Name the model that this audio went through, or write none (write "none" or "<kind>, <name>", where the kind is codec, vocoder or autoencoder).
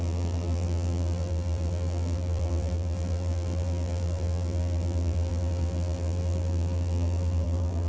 vocoder, BigVGAN v2